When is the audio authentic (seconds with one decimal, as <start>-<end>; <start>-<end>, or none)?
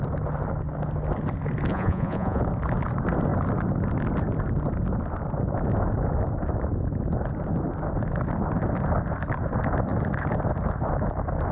0.0-1.7; 2.4-11.5